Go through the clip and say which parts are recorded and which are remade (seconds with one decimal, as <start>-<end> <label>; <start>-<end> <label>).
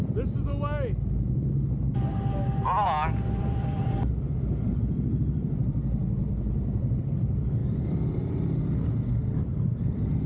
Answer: 0.0-3.4 recorded; 3.4-10.3 remade